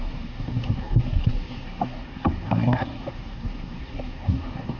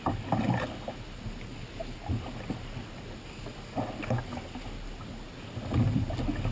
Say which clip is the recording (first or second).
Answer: second